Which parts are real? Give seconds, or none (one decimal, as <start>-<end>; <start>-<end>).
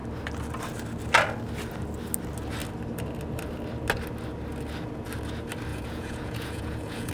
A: 0.0-5.7